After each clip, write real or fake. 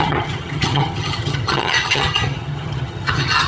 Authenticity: fake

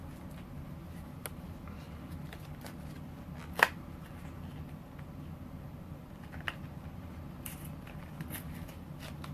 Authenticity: real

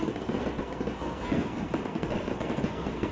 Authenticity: fake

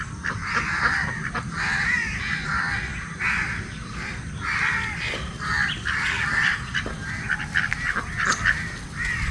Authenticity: real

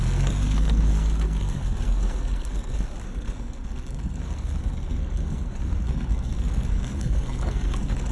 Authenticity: fake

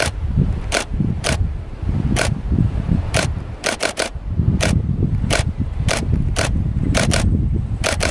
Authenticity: fake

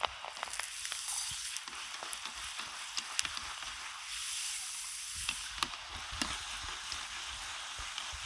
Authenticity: real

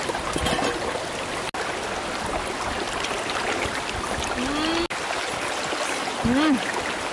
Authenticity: real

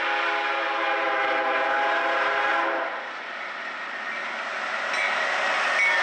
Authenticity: real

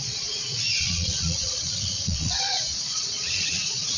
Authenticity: fake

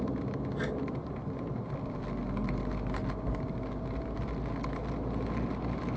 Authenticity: real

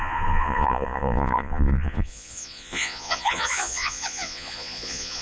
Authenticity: fake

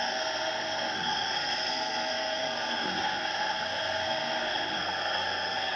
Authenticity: fake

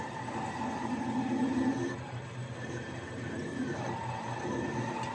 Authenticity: real